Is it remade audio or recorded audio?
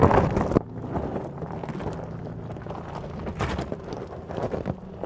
recorded